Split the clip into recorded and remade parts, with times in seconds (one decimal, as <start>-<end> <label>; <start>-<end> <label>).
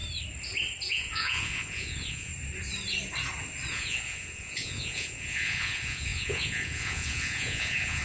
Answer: 0.0-0.9 recorded; 0.9-2.3 remade; 2.3-3.7 recorded; 3.7-8.0 remade